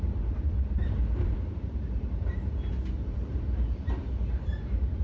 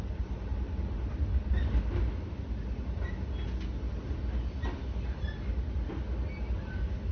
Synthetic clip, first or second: first